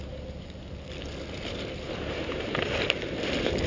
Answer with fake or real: real